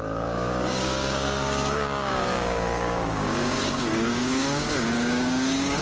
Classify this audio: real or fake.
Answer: fake